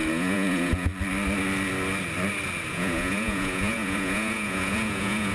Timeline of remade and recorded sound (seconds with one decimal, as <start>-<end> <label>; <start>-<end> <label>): 0.0-0.9 remade; 0.9-2.7 recorded; 2.7-5.3 remade